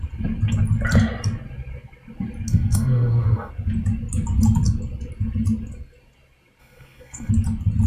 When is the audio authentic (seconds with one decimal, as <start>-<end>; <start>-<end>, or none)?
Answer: 0.0-2.5; 3.5-6.6; 7.3-7.9